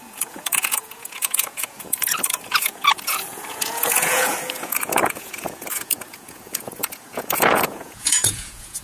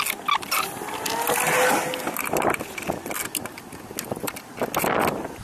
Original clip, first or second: second